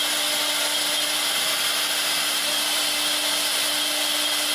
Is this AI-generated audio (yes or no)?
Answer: no